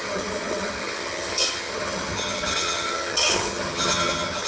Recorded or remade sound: remade